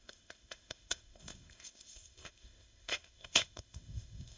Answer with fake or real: fake